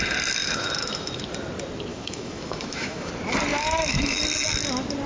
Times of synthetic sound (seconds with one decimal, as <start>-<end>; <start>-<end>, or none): 0.4-1.2; 1.9-3.1; 3.5-4.2